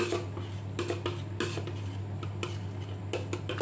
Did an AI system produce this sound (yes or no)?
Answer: no